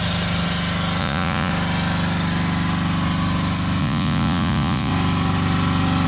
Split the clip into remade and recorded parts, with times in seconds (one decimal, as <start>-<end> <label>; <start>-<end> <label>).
0.0-1.0 recorded; 1.0-1.5 remade; 1.5-3.8 recorded; 3.8-4.9 remade; 4.9-6.1 recorded